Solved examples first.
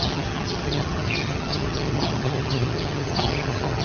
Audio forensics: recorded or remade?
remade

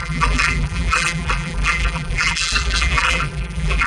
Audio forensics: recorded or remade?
remade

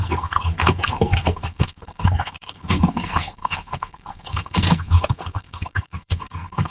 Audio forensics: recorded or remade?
remade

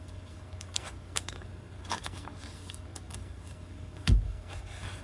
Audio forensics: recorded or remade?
remade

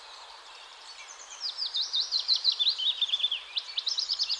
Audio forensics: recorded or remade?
remade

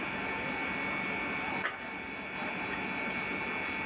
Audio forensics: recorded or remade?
recorded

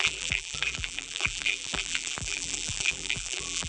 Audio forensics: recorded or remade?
remade